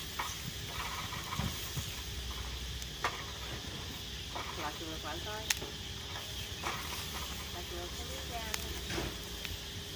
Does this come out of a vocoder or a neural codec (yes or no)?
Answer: no